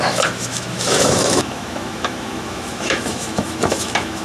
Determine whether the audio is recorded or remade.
remade